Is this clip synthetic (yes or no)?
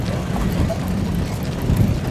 no